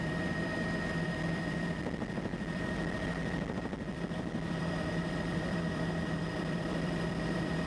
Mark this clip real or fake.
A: fake